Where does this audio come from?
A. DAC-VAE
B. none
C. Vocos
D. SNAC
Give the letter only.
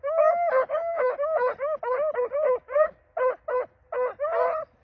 B